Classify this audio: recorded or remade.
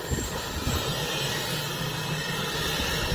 recorded